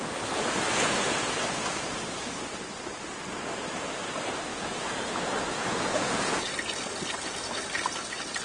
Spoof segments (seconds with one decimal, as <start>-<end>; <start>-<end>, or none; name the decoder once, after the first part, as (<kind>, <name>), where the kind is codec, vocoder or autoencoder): 4.5-6.5 (vocoder, Vocos)